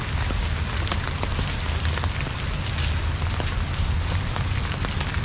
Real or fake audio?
real